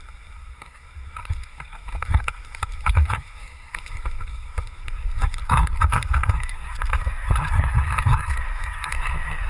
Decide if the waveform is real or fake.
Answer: fake